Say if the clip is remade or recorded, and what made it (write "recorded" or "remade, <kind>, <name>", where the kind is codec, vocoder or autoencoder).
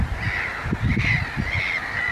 recorded